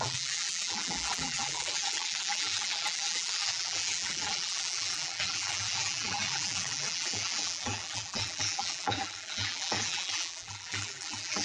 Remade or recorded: remade